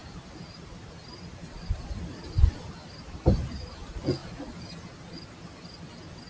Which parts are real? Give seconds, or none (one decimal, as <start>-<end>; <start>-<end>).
3.7-6.3